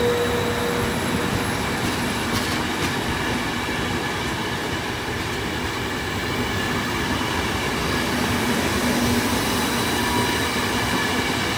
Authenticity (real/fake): real